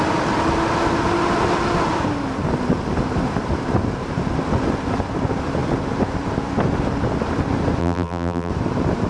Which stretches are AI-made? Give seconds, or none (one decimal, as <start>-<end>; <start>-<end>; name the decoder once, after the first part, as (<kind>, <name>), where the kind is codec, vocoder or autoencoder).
7.8-8.5 (vocoder, BigVGAN v2)

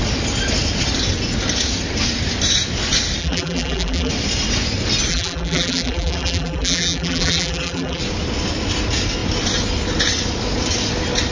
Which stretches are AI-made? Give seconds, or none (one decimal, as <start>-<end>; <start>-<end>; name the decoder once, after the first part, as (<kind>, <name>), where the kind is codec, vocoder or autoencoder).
3.2-4.1 (vocoder, BigVGAN v2); 5.1-8.0